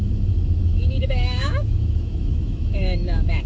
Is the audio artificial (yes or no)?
yes